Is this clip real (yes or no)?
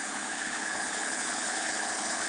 no